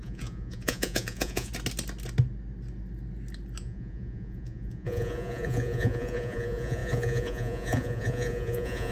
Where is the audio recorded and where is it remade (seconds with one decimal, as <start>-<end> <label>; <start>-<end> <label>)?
0.0-1.5 remade; 1.5-3.6 recorded; 3.6-8.9 remade